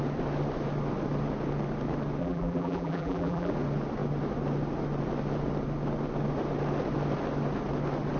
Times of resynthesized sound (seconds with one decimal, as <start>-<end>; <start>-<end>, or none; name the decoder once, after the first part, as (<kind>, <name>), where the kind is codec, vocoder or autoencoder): 2.2-3.5 (vocoder, BigVGAN v2)